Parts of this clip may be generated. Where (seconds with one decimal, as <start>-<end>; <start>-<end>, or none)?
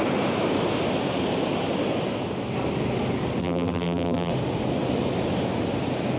3.4-4.3